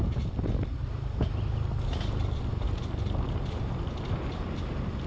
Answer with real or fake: real